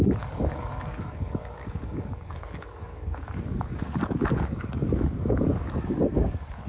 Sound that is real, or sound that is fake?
fake